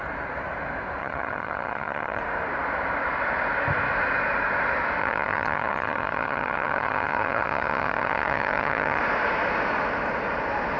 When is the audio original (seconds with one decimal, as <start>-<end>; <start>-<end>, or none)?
0.0-1.0; 2.2-5.0; 9.0-10.8